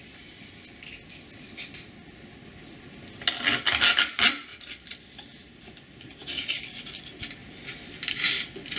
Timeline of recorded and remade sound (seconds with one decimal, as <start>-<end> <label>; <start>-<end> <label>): 0.0-4.5 recorded; 4.5-5.7 remade; 5.7-7.4 recorded; 7.4-7.9 remade; 7.9-8.8 recorded